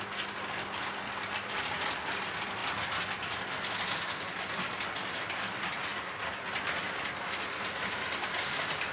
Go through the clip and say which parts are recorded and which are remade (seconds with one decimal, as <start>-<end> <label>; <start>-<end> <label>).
0.0-8.9 recorded